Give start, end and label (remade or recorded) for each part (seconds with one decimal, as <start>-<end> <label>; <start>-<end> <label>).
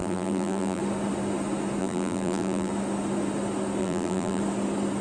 0.0-0.8 remade; 0.8-1.8 recorded; 1.8-2.7 remade; 2.7-3.8 recorded; 3.8-4.4 remade; 4.4-5.0 recorded